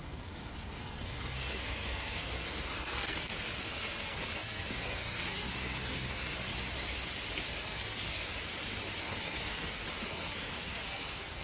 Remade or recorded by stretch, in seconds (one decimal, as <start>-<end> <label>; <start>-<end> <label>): 0.0-6.5 remade; 6.5-7.5 recorded; 7.5-8.3 remade; 8.3-9.0 recorded; 9.0-11.4 remade

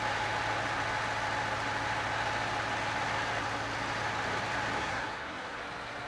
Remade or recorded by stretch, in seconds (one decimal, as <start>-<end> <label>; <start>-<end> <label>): 0.0-4.8 recorded; 4.8-5.6 remade; 5.6-6.1 recorded